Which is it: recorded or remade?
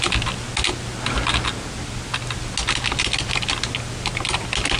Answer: recorded